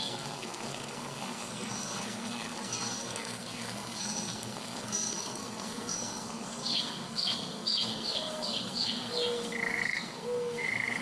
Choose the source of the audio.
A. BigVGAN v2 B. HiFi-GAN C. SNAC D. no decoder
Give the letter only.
C